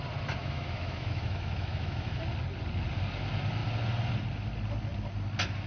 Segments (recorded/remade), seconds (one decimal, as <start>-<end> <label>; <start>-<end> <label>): 0.0-0.4 recorded; 0.4-2.2 remade; 2.2-5.7 recorded